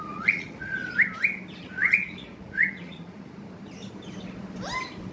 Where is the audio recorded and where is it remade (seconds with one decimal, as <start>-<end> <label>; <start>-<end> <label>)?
0.0-0.8 remade; 0.8-1.6 recorded; 1.6-3.4 remade; 3.4-5.1 recorded